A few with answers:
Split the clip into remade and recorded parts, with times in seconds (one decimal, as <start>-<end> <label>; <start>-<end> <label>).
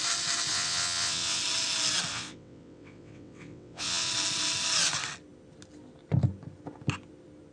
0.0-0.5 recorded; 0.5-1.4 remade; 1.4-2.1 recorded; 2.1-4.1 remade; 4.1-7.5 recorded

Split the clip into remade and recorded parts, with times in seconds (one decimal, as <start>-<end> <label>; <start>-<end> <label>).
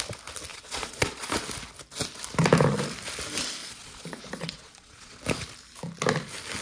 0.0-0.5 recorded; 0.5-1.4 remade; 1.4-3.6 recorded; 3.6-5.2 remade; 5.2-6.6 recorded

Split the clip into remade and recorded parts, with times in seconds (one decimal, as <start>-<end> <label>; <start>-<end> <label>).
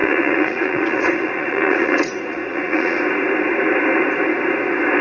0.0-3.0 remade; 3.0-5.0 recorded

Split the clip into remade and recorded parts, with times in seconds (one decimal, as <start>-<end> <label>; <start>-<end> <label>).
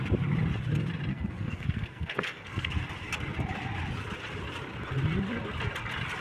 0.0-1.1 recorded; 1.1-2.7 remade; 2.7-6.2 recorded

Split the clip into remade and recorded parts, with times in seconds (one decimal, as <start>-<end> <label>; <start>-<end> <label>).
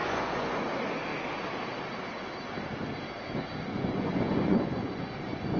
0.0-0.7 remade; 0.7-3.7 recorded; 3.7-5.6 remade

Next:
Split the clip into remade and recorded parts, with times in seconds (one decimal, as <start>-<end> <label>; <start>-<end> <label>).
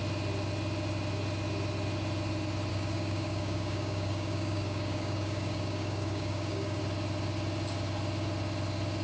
0.0-2.7 recorded; 2.7-6.8 remade; 6.8-9.0 recorded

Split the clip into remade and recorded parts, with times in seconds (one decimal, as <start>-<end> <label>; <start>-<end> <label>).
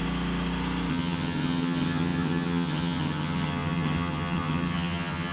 0.0-0.9 recorded; 0.9-5.3 remade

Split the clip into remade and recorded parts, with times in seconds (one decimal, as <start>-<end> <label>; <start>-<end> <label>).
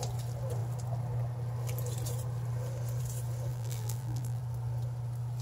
0.0-3.5 recorded; 3.5-4.4 remade; 4.4-5.4 recorded